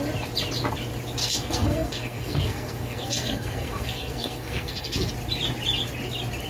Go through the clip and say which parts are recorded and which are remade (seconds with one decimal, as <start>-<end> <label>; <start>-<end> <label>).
0.0-1.2 recorded; 1.2-5.1 remade; 5.1-6.5 recorded